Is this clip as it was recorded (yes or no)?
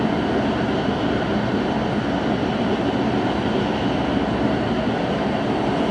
yes